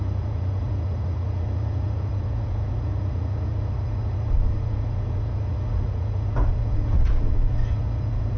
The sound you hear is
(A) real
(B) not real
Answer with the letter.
B